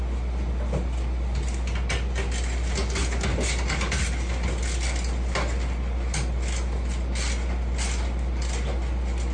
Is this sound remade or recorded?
recorded